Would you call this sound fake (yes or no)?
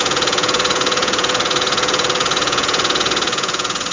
yes